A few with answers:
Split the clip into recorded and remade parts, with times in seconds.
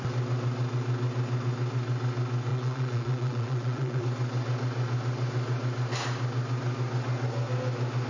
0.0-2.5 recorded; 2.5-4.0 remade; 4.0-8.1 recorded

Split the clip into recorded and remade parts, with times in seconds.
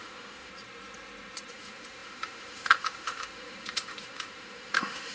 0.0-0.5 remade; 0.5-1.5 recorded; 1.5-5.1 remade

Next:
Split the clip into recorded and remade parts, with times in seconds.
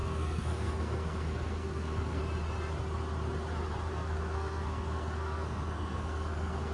0.0-2.2 remade; 2.2-3.9 recorded; 3.9-6.7 remade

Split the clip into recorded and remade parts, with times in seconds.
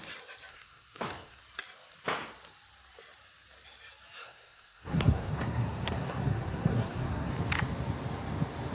0.0-0.5 recorded; 0.5-1.4 remade; 1.4-4.2 recorded; 4.2-7.3 remade; 7.3-8.7 recorded